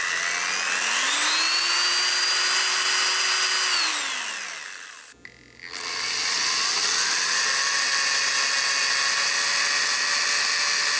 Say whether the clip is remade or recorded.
recorded